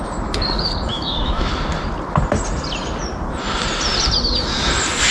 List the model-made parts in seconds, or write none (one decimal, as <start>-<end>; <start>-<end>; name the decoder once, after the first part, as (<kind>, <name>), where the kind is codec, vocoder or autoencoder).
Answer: 0.9-1.5 (autoencoder, DAC-VAE)